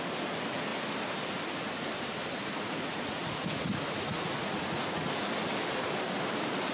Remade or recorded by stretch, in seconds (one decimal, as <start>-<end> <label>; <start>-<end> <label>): 0.0-2.5 recorded; 2.5-5.3 remade; 5.3-6.7 recorded